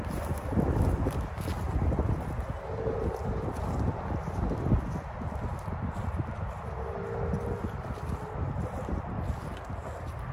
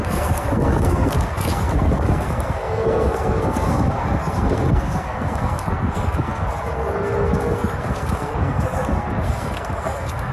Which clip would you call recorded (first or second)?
first